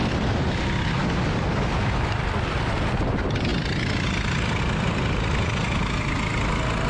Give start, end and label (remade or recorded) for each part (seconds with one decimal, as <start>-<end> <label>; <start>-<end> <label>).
0.0-6.9 recorded